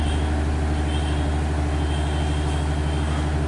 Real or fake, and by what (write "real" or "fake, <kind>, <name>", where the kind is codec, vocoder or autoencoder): real